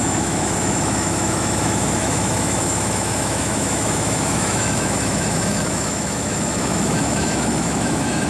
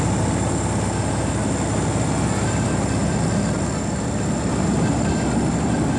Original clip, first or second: second